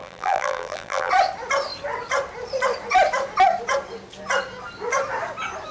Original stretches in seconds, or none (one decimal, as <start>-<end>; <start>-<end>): 1.1-5.7